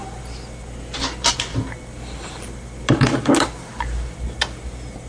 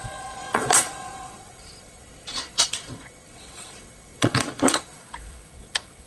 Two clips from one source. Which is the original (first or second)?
first